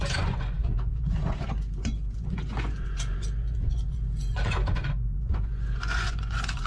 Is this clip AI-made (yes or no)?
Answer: yes